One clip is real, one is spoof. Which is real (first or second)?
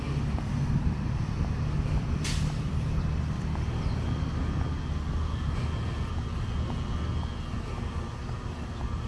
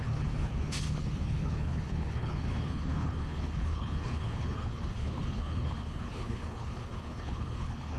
first